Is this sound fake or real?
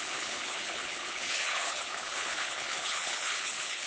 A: fake